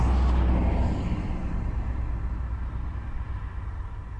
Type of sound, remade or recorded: recorded